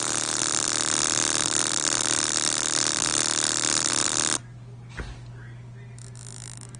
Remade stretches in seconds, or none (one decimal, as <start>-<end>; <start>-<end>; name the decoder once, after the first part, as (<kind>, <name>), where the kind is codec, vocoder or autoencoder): none